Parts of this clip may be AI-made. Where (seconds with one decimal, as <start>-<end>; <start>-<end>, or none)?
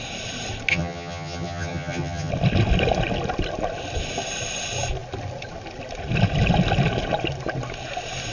0.7-2.3